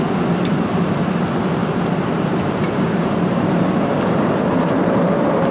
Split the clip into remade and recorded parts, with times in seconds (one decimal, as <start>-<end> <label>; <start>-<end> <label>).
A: 0.0-1.6 recorded; 1.6-3.1 remade; 3.1-5.5 recorded